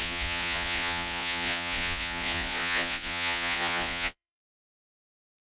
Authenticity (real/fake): fake